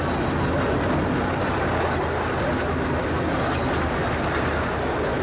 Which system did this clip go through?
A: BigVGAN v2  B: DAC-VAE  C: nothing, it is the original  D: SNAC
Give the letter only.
C